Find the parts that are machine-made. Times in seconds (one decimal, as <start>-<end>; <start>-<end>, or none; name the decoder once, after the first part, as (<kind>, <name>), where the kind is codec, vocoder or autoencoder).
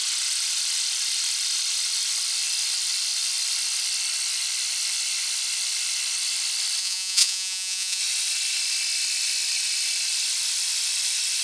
6.8-8.0 (vocoder, Vocos)